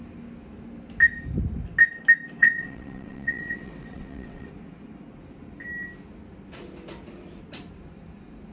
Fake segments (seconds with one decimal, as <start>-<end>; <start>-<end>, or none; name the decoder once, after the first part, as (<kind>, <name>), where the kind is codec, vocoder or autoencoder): 2.4-4.5 (vocoder, WaveNeXt)